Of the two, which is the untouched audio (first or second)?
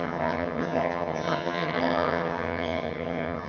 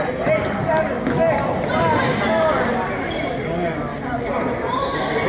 second